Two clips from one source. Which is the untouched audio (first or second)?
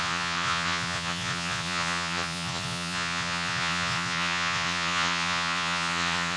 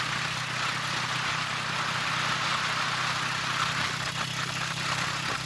second